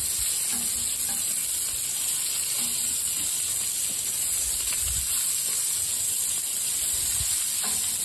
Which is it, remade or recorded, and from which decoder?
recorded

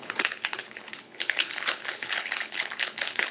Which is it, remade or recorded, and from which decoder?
remade, codec, HILCodec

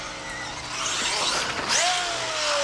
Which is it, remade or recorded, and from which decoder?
recorded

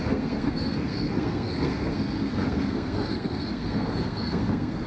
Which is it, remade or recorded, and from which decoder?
remade, codec, SNAC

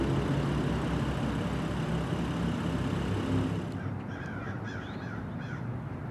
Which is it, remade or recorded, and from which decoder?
recorded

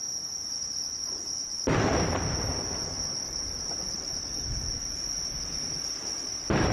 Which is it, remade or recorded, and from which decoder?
recorded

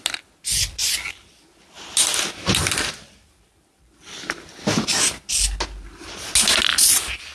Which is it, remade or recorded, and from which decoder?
recorded